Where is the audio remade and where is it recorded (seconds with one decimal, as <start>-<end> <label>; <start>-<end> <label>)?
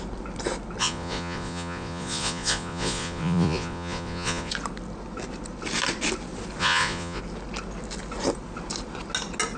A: 0.0-0.8 recorded; 0.8-4.5 remade; 4.5-6.6 recorded; 6.6-7.2 remade; 7.2-9.6 recorded